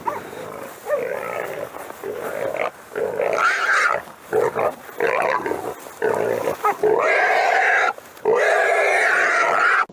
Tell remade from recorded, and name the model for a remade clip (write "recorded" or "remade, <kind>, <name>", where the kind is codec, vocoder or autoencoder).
recorded